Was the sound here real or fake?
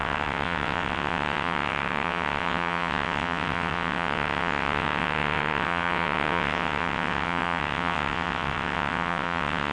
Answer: fake